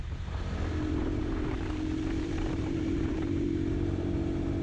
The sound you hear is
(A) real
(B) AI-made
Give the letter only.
B